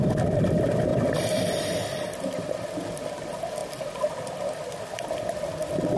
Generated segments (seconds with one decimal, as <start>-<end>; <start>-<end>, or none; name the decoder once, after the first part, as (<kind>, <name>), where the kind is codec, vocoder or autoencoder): 0.9-2.0 (vocoder, BigVGAN v2)